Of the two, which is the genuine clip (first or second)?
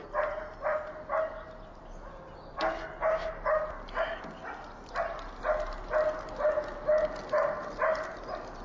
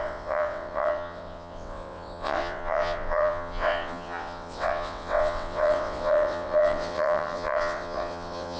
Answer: first